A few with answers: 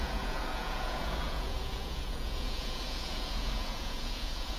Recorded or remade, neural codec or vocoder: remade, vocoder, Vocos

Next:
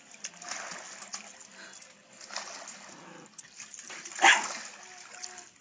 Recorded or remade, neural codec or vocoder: recorded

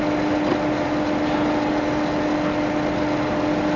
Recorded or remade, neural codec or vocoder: recorded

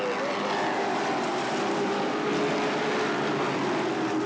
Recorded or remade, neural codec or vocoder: recorded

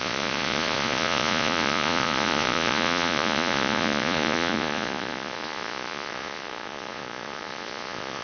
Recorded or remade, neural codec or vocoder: remade, vocoder, Vocos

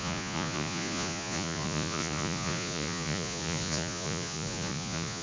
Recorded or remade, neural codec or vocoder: remade, vocoder, Vocos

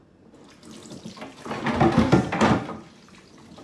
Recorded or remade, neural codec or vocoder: recorded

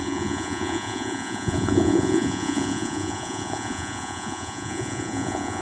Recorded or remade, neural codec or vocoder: remade, vocoder, Vocos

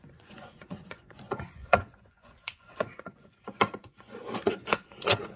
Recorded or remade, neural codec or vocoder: remade, vocoder, Vocos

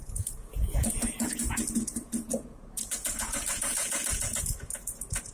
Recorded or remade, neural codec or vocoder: remade, vocoder, Vocos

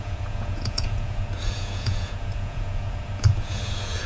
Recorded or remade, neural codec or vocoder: remade, vocoder, Vocos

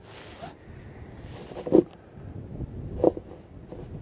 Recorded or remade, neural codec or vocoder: recorded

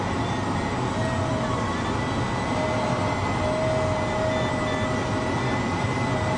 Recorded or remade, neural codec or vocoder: recorded